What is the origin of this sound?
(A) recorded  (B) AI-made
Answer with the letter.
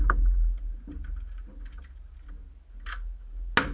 A